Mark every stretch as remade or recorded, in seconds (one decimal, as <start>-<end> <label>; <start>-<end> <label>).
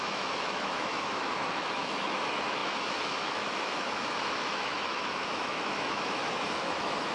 0.0-7.1 remade